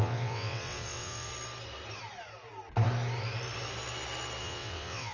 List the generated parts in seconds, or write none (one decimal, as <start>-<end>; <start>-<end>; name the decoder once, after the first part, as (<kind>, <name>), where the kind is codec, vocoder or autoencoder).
0.0-1.3 (vocoder, WaveNeXt); 4.4-5.1